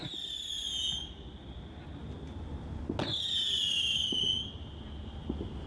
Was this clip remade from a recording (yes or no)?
no